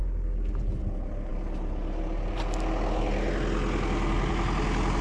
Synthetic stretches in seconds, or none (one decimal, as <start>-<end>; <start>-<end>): none